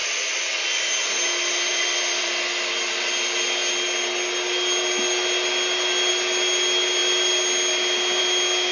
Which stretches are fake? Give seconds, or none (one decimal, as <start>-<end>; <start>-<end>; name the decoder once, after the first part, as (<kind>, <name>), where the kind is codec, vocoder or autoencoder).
0.0-0.5 (vocoder, BigVGAN v2); 1.7-2.3